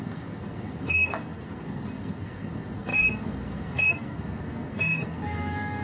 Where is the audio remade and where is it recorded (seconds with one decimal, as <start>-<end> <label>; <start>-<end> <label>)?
0.0-5.8 remade